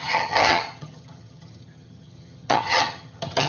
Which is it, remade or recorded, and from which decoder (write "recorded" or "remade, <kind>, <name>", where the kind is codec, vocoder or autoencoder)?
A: remade, vocoder, HiFi-GAN